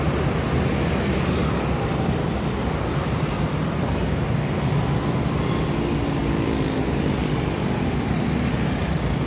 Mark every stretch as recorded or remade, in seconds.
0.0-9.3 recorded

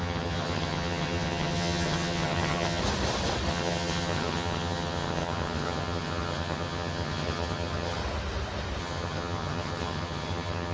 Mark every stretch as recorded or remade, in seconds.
0.0-2.8 remade; 2.8-3.5 recorded; 3.5-8.0 remade; 8.0-8.8 recorded; 8.8-10.7 remade

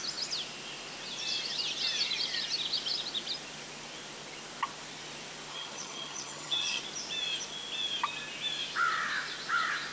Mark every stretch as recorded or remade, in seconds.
0.0-5.5 recorded; 5.5-6.8 remade; 6.8-9.9 recorded